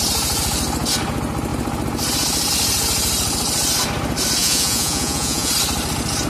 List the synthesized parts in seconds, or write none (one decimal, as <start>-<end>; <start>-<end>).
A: 4.4-5.5

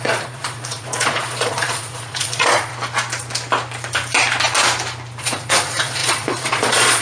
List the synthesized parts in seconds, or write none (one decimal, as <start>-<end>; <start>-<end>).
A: 0.0-2.7; 5.2-7.0

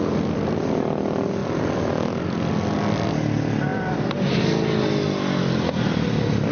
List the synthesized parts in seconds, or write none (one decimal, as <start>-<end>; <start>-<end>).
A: none

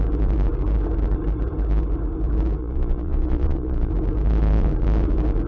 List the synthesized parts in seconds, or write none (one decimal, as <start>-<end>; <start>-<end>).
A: 2.6-3.9

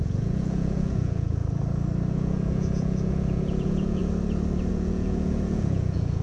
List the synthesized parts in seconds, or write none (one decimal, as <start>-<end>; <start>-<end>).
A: 0.0-1.4; 2.1-4.0; 4.7-6.2

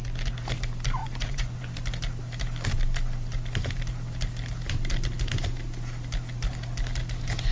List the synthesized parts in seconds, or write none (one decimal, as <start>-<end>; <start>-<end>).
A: 1.0-1.7

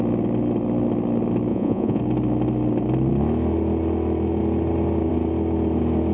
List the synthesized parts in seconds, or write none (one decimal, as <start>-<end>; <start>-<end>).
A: 1.5-2.0